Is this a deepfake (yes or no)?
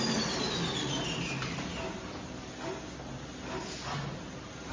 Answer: no